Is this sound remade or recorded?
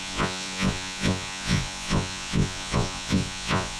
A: remade